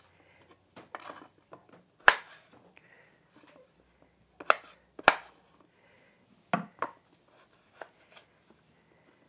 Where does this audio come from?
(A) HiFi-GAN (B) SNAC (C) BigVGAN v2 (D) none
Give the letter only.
D